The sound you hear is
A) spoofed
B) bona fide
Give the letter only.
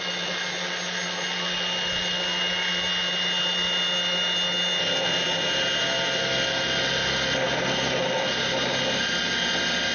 B